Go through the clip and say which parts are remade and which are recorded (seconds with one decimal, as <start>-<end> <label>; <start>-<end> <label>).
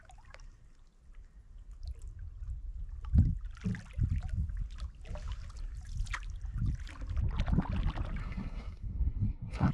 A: 0.0-8.2 recorded; 8.2-9.7 remade